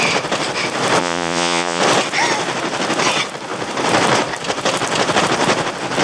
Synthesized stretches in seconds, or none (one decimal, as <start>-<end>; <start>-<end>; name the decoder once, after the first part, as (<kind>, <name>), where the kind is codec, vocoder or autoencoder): 1.0-1.8 (vocoder, Vocos)

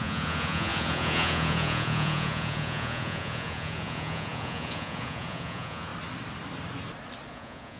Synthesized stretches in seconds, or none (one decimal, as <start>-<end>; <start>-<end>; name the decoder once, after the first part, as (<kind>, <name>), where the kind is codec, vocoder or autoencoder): 0.0-5.9 (vocoder, Vocos); 7.3-7.8

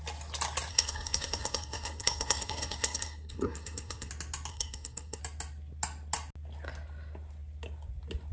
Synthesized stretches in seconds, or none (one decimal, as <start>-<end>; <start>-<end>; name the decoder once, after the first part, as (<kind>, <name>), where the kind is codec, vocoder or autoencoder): 0.7-4.1 (codec, SNAC); 4.5-5.2

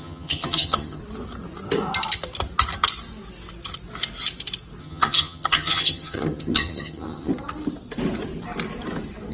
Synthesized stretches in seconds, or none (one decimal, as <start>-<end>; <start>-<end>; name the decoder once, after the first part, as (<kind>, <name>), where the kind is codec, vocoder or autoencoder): 0.0-1.0 (vocoder, HiFi-GAN); 4.8-7.3

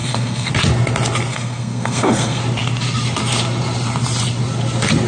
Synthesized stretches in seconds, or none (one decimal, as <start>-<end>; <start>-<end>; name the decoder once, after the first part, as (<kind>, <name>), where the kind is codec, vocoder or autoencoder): 0.0-0.5 (codec, SNAC); 1.3-2.4

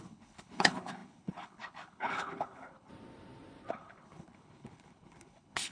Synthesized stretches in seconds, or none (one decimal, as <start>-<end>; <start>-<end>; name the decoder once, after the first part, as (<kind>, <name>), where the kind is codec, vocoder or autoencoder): 0.0-2.9 (codec, HILCodec); 3.7-5.7